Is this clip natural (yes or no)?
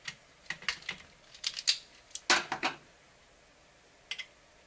yes